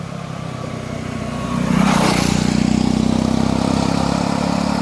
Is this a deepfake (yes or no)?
yes